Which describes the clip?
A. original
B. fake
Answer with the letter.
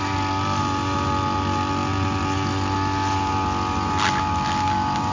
A